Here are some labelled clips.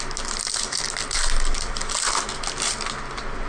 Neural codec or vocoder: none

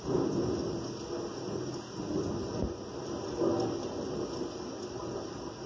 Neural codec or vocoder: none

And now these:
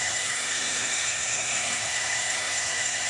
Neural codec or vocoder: codec, SNAC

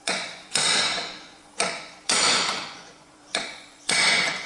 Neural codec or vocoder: vocoder, Vocos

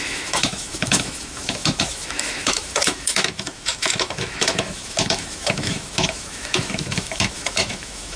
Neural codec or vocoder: autoencoder, DAC-VAE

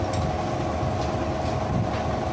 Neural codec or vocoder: none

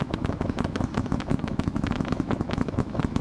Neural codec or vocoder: autoencoder, DAC-VAE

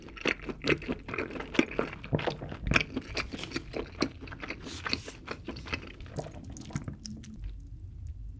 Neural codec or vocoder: none